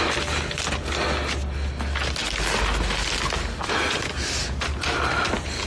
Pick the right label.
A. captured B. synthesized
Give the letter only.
A